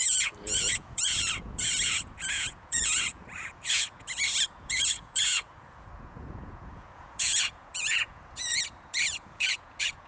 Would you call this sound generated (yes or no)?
yes